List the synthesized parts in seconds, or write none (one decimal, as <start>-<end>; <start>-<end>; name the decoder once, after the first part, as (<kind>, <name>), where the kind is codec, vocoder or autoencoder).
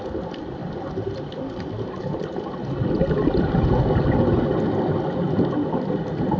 none